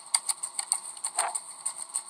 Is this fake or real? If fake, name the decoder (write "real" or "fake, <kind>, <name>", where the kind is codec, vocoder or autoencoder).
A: real